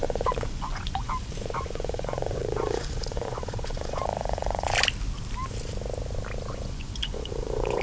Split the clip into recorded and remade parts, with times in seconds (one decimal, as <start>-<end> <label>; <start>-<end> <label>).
0.0-4.7 remade; 4.7-6.5 recorded; 6.5-7.8 remade